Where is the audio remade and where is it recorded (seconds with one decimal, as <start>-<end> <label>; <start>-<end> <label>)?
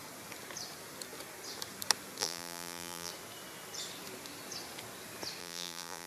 0.0-2.2 recorded; 2.2-3.1 remade; 3.1-5.4 recorded; 5.4-6.1 remade